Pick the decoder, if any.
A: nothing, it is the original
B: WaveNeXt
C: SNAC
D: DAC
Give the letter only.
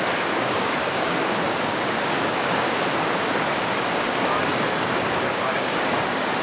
D